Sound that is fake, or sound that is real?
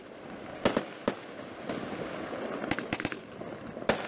real